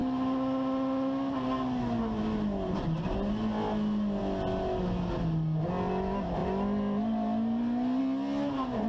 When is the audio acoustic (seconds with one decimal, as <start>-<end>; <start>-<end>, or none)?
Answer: 0.0-8.9